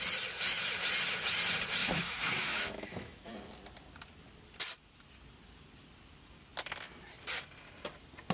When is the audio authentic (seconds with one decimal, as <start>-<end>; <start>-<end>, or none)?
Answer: 0.0-1.8; 3.3-8.3